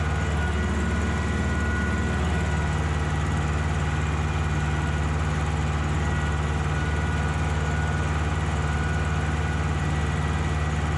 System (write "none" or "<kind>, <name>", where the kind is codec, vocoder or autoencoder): none